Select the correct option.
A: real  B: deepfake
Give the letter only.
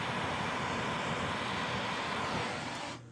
A